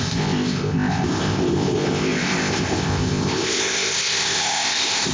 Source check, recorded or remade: remade